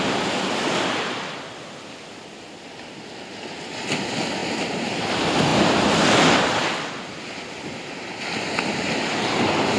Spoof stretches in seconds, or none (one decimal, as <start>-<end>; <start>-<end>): none